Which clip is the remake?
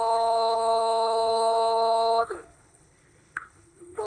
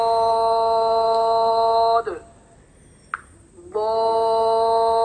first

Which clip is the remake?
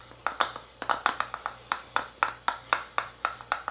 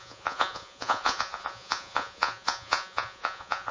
second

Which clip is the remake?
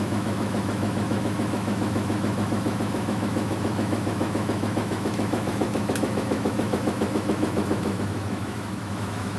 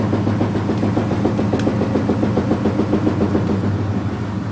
first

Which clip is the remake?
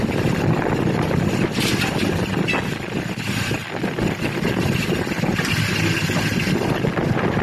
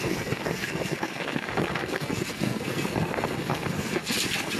second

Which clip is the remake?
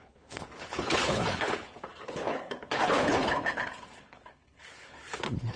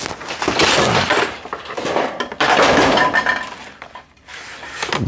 first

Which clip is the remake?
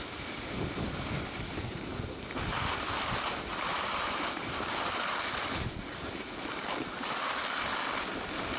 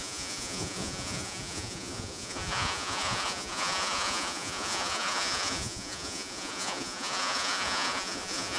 second